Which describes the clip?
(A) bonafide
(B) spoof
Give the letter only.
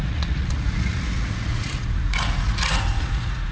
B